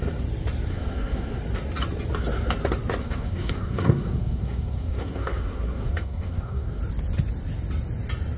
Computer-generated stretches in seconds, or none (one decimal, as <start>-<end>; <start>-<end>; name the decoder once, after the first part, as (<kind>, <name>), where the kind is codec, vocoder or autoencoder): 0.7-1.4 (codec, SNAC); 3.0-6.8